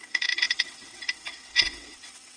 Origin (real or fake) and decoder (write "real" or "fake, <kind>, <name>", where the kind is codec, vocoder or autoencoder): fake, vocoder, WaveNeXt